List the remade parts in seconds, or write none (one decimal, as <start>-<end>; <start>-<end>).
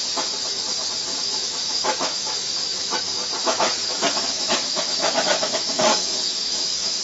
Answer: 1.1-2.9; 3.4-7.0